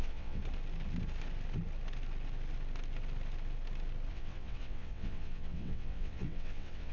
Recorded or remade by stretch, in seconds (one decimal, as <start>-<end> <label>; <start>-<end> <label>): 0.0-0.4 remade; 0.4-4.1 recorded; 4.1-6.9 remade

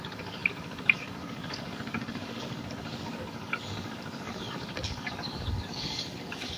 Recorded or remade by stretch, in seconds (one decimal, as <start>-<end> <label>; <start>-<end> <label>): 0.0-6.6 remade

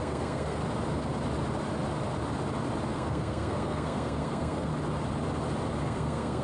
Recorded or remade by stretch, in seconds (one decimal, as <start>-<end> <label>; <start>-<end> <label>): 0.0-0.6 remade; 0.6-2.9 recorded; 2.9-4.7 remade; 4.7-5.8 recorded; 5.8-6.4 remade

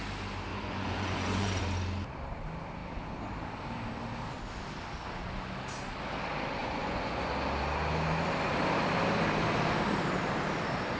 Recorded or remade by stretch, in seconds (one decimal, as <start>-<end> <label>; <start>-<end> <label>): 0.0-0.5 recorded; 0.5-1.6 remade; 1.6-6.6 recorded; 6.6-7.3 remade; 7.3-11.0 recorded

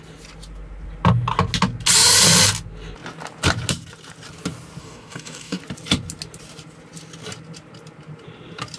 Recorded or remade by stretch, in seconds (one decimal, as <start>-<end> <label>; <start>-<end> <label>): 0.0-4.8 recorded; 4.8-5.6 remade; 5.6-8.8 recorded